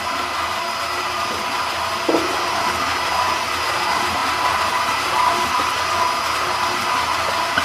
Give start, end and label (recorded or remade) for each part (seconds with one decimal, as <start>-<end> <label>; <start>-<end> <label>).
0.0-7.6 recorded

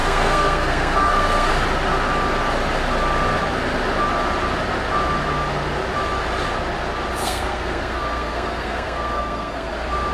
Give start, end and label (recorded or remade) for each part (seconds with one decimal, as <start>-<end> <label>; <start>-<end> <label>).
0.0-1.5 remade; 1.5-7.2 recorded; 7.2-9.7 remade; 9.7-10.1 recorded

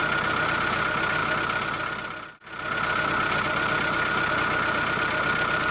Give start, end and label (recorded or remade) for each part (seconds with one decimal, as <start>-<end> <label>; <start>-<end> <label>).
0.0-5.7 recorded